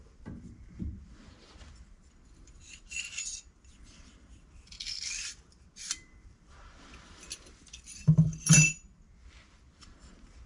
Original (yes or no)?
no